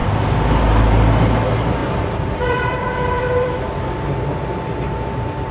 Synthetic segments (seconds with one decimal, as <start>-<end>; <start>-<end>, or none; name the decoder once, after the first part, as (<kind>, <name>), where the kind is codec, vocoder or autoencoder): 0.0-0.6 (vocoder, BigVGAN v2); 1.8-5.1